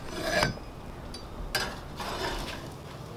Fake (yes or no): no